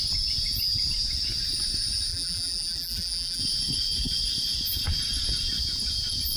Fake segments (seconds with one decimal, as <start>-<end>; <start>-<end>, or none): 2.1-3.4